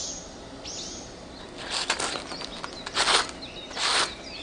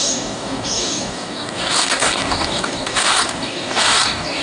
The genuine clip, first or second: first